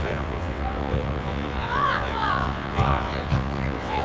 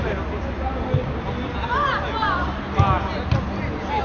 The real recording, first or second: second